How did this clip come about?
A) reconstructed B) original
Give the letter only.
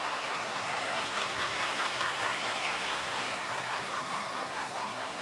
A